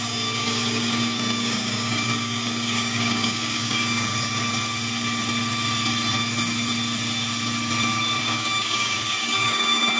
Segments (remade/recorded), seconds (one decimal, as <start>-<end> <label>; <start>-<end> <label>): 0.0-4.1 remade; 4.1-8.2 recorded; 8.2-10.0 remade